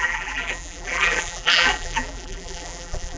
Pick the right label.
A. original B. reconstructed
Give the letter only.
B